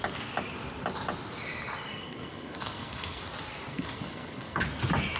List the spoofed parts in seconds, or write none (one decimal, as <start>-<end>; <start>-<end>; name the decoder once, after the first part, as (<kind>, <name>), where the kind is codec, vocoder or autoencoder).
1.9-3.2 (codec, SNAC); 3.7-4.6

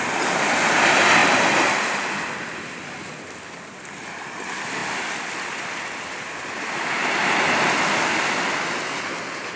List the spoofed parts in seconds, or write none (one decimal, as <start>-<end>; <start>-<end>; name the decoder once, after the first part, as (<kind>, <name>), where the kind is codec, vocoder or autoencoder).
none

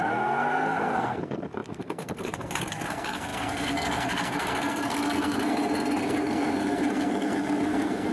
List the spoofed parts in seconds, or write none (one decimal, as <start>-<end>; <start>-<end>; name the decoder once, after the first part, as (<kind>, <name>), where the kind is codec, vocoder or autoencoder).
0.0-8.1 (codec, SNAC)

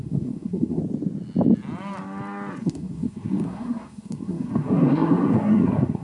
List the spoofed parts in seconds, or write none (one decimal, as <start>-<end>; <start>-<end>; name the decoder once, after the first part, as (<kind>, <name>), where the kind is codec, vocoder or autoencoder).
0.0-0.8 (codec, SNAC); 2.6-6.0

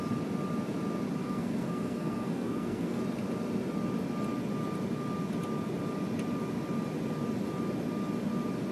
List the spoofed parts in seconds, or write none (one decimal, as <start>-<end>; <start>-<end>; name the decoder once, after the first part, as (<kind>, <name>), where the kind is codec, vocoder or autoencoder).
1.2-3.0 (codec, SNAC)

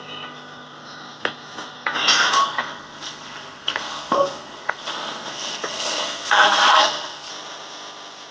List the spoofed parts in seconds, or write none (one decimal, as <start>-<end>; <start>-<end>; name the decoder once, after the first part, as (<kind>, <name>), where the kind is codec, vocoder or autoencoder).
2.4-7.3 (codec, SNAC)

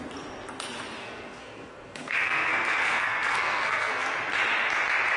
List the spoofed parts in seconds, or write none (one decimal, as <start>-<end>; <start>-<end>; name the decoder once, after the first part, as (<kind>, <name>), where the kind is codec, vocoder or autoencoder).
1.0-4.1 (codec, SNAC)

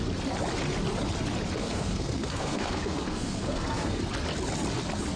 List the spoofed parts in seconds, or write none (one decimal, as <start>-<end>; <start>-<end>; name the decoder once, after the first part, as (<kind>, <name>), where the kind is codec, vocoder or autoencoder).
1.6-4.0 (codec, SNAC)